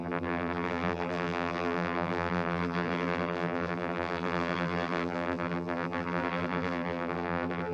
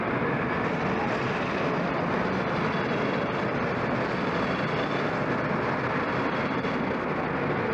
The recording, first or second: second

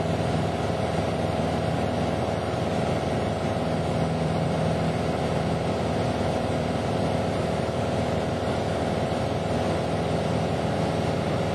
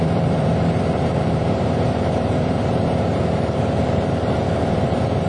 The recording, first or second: first